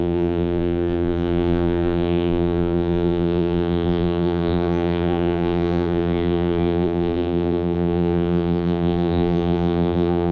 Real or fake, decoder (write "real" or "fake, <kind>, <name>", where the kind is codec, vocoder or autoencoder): fake, vocoder, BigVGAN v2